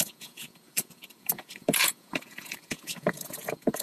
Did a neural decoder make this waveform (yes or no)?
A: yes